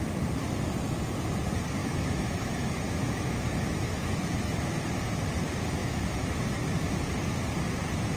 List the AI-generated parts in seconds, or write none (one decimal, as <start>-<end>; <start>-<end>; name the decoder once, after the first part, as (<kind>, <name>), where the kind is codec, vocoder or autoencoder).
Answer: 1.8-4.8 (autoencoder, DAC-VAE); 5.8-6.9